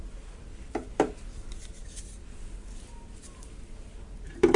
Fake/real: fake